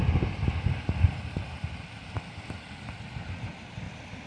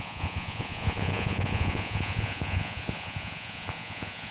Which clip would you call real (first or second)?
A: first